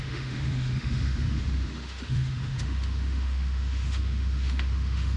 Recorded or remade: remade